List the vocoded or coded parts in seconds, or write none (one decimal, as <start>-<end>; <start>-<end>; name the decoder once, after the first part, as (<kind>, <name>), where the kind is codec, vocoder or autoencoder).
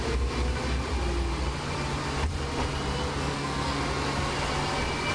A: 3.1-3.8 (codec, SNAC)